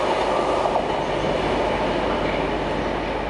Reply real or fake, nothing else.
real